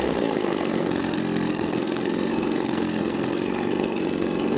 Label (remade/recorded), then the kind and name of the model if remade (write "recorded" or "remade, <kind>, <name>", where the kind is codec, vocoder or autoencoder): remade, codec, SNAC